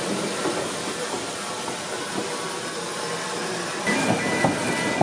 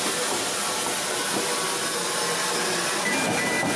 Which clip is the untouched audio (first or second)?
second